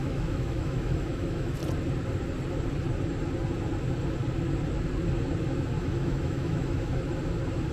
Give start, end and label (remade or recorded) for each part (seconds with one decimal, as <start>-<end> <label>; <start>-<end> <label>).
0.0-1.6 remade; 1.6-5.8 recorded; 5.8-6.9 remade; 6.9-7.7 recorded